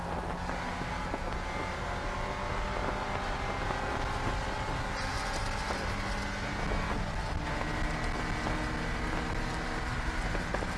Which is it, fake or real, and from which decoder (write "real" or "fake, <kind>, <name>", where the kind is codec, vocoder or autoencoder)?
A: real